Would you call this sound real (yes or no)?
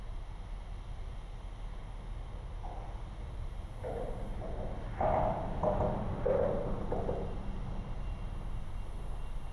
yes